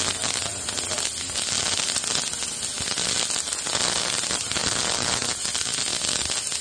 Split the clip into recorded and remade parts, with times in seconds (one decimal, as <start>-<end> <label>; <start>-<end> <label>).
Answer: 0.0-6.6 recorded